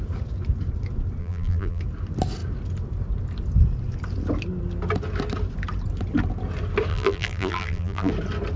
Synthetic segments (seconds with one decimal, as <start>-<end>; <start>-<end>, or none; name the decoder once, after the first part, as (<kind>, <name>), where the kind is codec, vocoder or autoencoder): 1.2-1.8 (vocoder, BigVGAN v2); 6.9-8.1